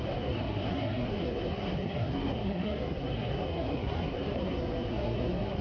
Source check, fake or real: fake